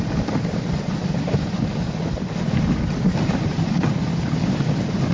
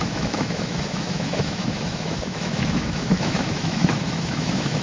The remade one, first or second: second